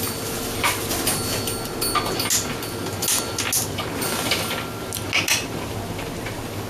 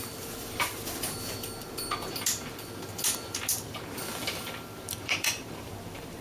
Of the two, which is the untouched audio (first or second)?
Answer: first